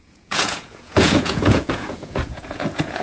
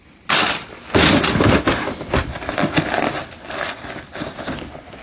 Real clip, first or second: second